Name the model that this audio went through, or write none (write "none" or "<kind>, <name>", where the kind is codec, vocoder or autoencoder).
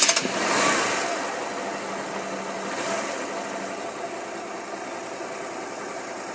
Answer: none